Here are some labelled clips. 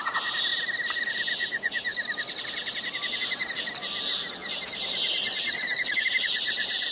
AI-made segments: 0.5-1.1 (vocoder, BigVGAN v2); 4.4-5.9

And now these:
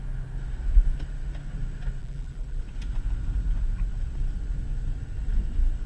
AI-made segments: 2.0-2.6 (vocoder, BigVGAN v2)

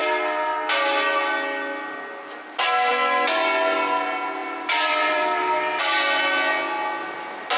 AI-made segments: 4.4-5.8 (vocoder, BigVGAN v2)

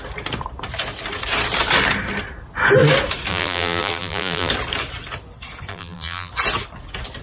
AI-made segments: 3.3-4.5 (vocoder, BigVGAN v2); 5.7-6.3